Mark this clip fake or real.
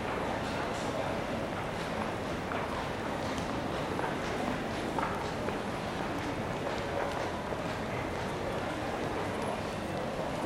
real